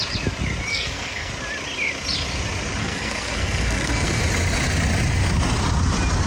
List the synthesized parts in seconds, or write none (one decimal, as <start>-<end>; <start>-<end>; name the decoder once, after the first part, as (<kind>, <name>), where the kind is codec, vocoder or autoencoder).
0.7-1.3 (codec, SNAC); 2.8-4.2